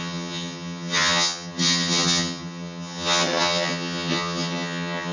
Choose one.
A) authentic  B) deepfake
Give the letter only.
B